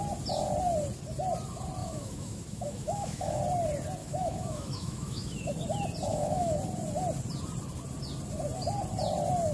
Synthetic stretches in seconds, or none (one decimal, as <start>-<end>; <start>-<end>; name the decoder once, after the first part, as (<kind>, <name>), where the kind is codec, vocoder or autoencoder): 1.8-3.4 (autoencoder, DAC-VAE); 4.0-5.5; 6.1-6.6